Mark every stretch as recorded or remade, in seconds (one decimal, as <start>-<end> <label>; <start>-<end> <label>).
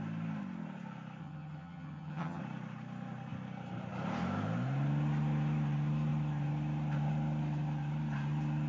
0.0-1.2 recorded; 1.2-2.4 remade; 2.4-8.7 recorded